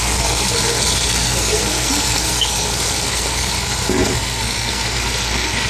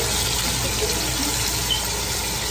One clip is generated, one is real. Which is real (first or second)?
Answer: second